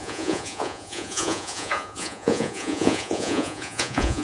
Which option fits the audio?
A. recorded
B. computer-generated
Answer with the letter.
B